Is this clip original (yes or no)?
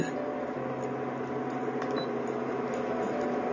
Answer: yes